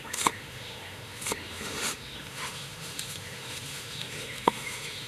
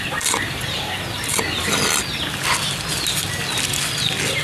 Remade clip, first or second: first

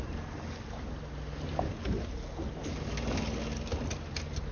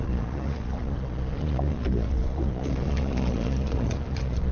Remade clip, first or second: second